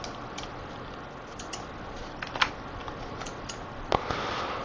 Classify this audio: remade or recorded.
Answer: recorded